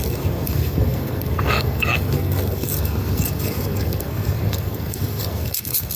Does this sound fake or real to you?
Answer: fake